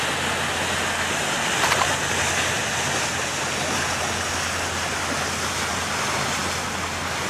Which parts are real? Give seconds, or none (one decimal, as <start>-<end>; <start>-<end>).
0.0-7.3